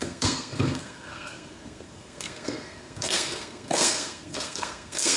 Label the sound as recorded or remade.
remade